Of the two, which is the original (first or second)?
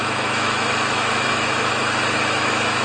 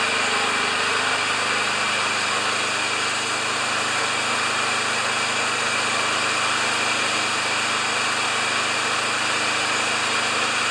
second